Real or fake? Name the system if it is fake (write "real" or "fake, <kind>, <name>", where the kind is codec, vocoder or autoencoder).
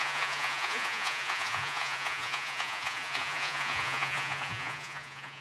fake, vocoder, Vocos